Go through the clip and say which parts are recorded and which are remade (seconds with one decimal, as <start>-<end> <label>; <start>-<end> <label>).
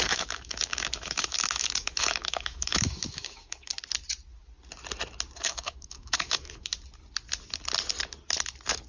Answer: 0.0-3.7 remade; 3.7-5.4 recorded; 5.4-6.7 remade; 6.7-8.9 recorded